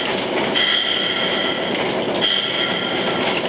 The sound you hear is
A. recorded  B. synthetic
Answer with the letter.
A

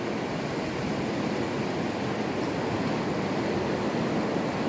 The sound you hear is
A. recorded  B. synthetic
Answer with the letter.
A